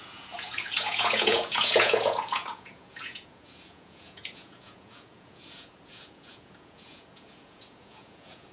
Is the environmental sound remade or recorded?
remade